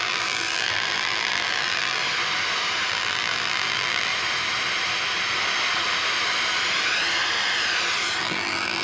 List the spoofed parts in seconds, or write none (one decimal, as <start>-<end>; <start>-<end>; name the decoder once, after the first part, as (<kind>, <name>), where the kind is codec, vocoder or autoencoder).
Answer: 0.0-2.0 (vocoder, BigVGAN v2); 2.9-4.1; 8.2-8.8